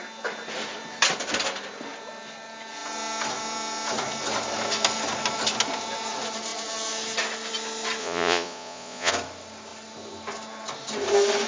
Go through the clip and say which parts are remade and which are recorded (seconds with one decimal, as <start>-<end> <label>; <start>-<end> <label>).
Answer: 0.0-8.0 recorded; 8.0-9.1 remade; 9.1-11.5 recorded